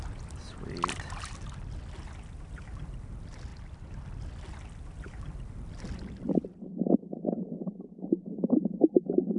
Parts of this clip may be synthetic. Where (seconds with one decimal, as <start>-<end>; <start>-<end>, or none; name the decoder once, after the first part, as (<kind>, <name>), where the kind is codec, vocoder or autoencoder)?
none